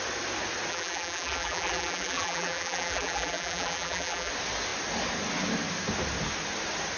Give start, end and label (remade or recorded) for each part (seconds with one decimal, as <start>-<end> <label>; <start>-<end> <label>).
0.0-0.7 recorded; 0.7-4.3 remade; 4.3-7.0 recorded